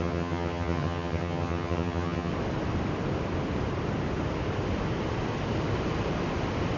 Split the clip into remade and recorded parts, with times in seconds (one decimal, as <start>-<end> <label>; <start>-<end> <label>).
0.0-2.3 remade; 2.3-6.8 recorded